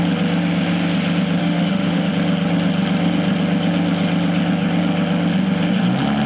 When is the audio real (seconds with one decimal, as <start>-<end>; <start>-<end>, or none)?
0.0-1.4; 2.1-6.3